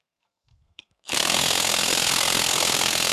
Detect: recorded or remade remade